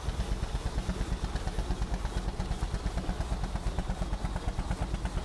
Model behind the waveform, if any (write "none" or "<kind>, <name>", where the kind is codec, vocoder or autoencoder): none